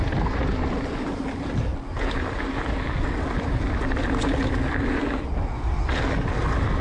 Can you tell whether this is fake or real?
real